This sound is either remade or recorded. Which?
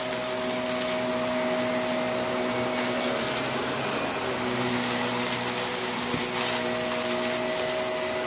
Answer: recorded